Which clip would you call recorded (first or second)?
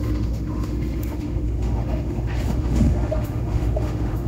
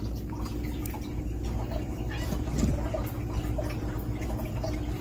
second